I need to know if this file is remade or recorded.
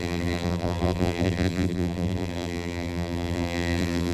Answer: remade